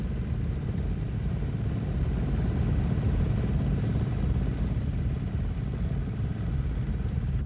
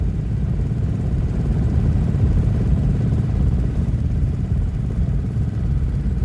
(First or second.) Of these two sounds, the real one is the first